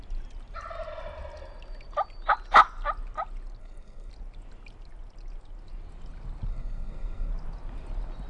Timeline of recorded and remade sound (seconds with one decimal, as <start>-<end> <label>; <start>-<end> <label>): 0.0-3.6 recorded; 3.6-4.1 remade; 4.1-6.5 recorded; 6.5-7.3 remade; 7.3-8.3 recorded

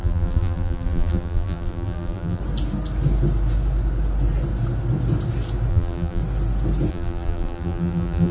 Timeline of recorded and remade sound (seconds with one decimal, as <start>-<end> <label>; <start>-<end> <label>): 0.0-2.4 remade; 2.4-5.7 recorded; 5.7-6.2 remade; 6.2-6.9 recorded; 6.9-8.3 remade

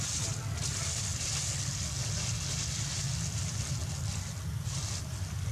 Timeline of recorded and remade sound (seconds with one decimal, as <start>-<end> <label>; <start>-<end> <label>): 0.0-5.5 recorded

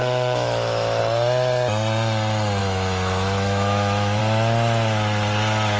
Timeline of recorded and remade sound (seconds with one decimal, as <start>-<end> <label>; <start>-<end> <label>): 0.0-1.0 remade; 1.0-2.6 recorded; 2.6-4.2 remade; 4.2-5.8 recorded

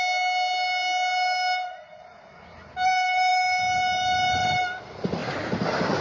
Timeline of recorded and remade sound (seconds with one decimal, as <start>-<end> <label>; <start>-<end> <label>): 0.0-6.0 recorded